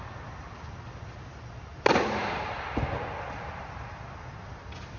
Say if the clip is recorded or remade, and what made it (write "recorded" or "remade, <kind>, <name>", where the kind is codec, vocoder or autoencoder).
recorded